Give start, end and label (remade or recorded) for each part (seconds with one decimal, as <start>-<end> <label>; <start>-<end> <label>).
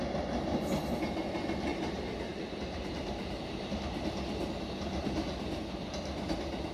0.0-1.7 recorded; 1.7-3.8 remade; 3.8-6.7 recorded